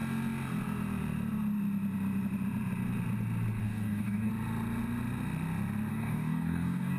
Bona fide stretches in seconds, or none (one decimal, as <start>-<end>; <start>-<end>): 0.0-3.6; 4.3-5.9